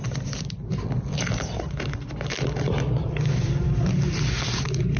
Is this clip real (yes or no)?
no